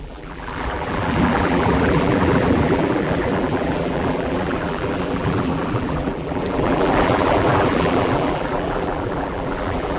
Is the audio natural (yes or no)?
no